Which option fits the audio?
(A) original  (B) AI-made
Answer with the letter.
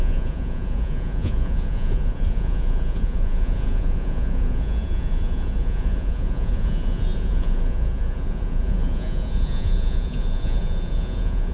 B